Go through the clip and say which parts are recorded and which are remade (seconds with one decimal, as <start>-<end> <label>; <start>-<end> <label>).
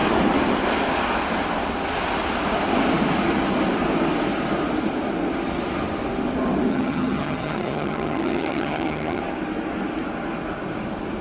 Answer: 0.0-6.7 recorded; 6.7-9.2 remade; 9.2-11.2 recorded